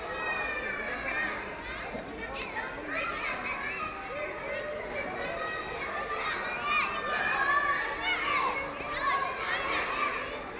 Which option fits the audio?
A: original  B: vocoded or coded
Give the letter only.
A